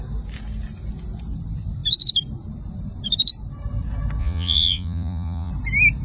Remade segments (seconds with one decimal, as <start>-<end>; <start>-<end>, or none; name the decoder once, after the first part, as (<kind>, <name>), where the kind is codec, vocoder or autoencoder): 4.2-5.5 (vocoder, Vocos)